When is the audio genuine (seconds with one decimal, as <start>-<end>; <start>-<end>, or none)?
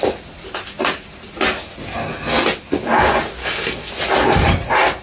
0.0-3.4; 3.9-5.0